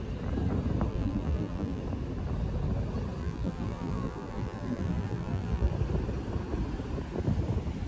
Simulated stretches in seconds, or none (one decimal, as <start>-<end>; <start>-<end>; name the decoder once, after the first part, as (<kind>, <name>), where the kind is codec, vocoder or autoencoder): 0.9-1.8 (vocoder, BigVGAN v2); 3.2-5.7